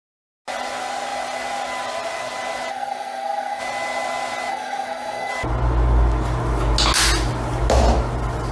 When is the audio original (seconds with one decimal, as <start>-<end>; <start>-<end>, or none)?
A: 0.0-2.7; 3.6-4.5; 5.3-8.5

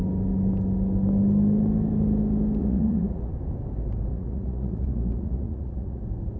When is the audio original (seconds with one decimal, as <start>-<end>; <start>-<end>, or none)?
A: 0.0-2.6; 3.3-4.1; 6.0-6.4

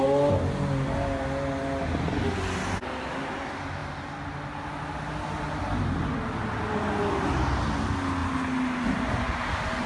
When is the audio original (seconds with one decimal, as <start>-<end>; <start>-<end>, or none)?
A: 0.0-9.9

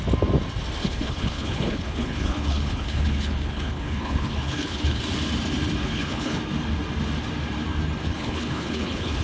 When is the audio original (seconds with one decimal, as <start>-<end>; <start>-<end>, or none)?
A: 0.0-0.8; 5.0-5.8; 6.4-8.0

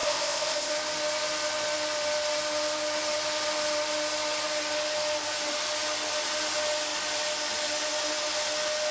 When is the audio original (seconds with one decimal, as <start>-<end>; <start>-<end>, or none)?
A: 0.7-8.9

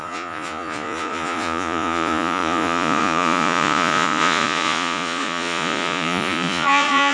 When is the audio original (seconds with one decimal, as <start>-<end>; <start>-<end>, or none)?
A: none

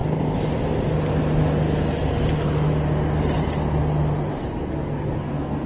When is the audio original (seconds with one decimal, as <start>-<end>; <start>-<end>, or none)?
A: 0.0-4.4